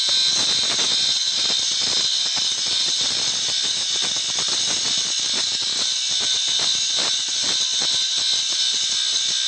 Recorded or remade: recorded